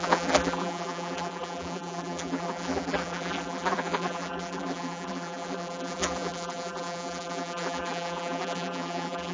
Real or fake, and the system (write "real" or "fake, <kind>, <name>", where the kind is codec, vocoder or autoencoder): fake, vocoder, BigVGAN v2